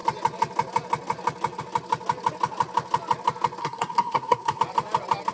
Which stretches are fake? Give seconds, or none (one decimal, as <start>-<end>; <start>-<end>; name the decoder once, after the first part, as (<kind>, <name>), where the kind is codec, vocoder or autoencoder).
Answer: 3.6-4.6 (codec, SNAC)